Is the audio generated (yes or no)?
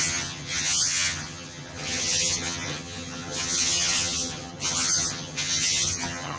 yes